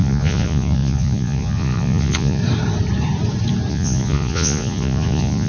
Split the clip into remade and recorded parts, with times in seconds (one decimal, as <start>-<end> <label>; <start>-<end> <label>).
0.0-2.4 remade; 2.4-3.7 recorded; 3.7-5.5 remade